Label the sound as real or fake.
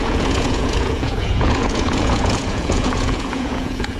fake